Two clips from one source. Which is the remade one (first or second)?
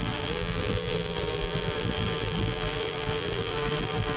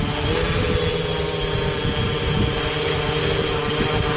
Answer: first